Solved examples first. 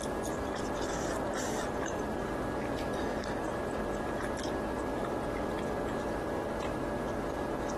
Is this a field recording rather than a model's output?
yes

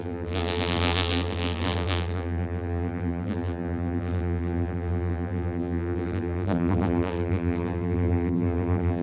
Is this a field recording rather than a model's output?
no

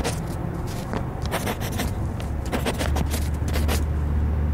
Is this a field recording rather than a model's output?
yes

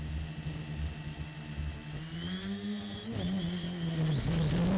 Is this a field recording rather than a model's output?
yes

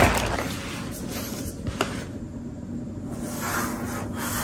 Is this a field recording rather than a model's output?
yes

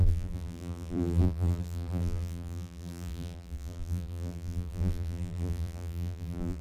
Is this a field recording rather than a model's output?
no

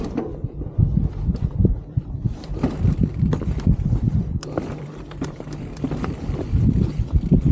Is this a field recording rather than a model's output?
no